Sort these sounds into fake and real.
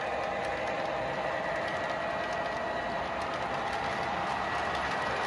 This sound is real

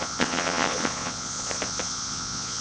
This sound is fake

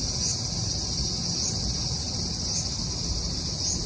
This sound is real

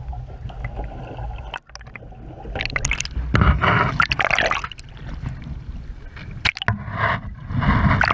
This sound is real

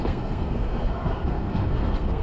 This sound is fake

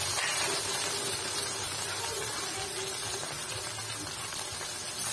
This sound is real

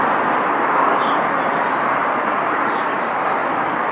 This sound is fake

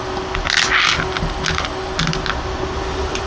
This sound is real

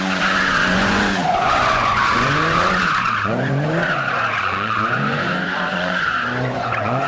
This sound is fake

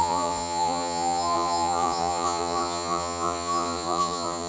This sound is fake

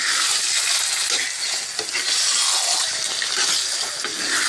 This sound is real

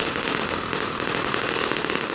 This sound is fake